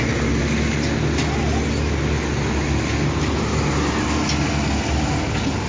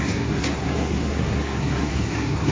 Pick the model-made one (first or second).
second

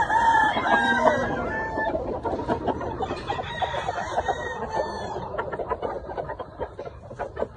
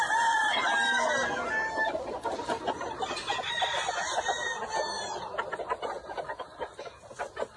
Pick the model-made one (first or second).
first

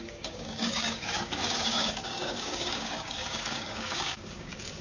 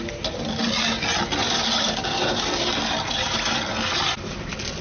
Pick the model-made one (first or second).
first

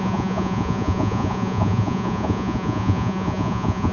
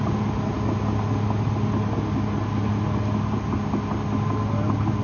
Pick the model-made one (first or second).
first